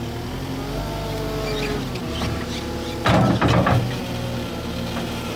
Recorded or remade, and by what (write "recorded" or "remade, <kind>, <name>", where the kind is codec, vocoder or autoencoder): recorded